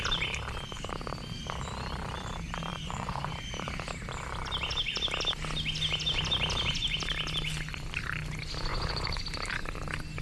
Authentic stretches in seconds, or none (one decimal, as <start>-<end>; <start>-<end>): 0.0-2.7; 3.3-8.7; 9.2-10.2